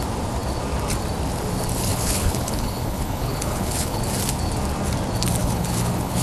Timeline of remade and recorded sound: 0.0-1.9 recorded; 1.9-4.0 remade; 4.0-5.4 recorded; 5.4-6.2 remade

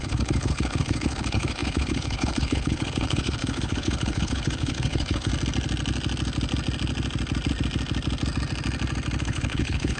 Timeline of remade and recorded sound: 0.0-5.3 remade; 5.3-9.2 recorded; 9.2-10.0 remade

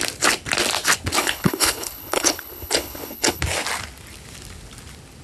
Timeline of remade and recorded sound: 0.0-1.2 recorded; 1.2-3.4 remade; 3.4-5.2 recorded

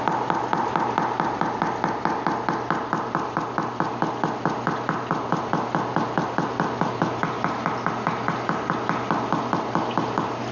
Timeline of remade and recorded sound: 0.0-10.5 recorded

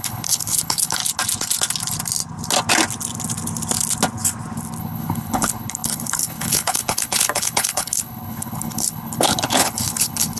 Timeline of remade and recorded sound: 0.0-1.0 remade; 1.0-4.8 recorded; 4.8-10.4 remade

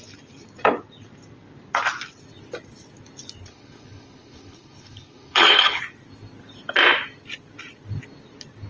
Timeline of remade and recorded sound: 0.0-3.5 recorded; 3.5-5.8 remade; 5.8-8.7 recorded